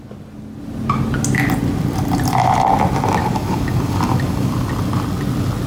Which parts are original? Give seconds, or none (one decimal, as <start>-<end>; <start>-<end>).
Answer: 0.0-3.2; 4.5-5.7